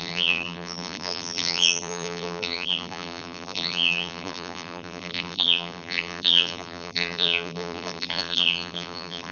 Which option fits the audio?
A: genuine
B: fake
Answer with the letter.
B